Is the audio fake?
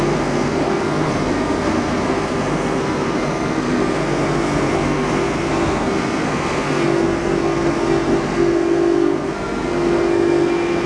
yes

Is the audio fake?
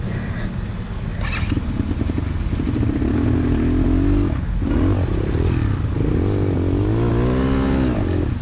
no